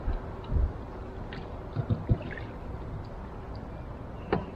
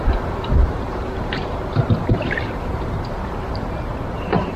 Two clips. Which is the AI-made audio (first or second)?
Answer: second